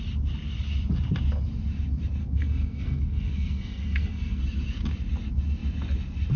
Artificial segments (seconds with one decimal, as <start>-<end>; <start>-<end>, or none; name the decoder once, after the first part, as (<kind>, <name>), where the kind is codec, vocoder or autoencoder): 2.2-4.4 (codec, SNAC)